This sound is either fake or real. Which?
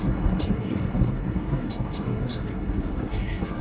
fake